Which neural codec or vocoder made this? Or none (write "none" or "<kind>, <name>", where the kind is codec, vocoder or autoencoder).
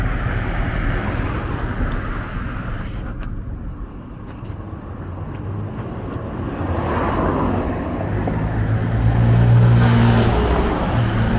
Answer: none